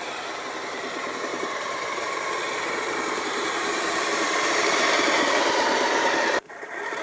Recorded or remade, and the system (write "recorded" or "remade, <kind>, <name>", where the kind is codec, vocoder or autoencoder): remade, vocoder, BigVGAN v2